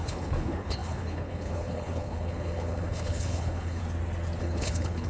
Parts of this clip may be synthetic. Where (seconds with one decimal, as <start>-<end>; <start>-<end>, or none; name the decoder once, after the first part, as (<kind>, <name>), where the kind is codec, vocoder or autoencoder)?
0.0-3.8 (codec, HILCodec); 4.4-5.1